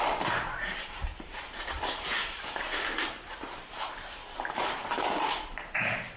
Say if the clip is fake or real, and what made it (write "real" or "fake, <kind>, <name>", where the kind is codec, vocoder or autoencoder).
fake, vocoder, BigVGAN v2